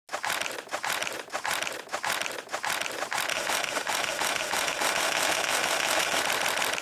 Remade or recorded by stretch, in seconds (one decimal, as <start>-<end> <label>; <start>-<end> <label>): 0.0-3.3 recorded; 3.3-6.2 remade; 6.2-6.8 recorded